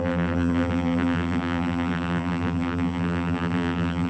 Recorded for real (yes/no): no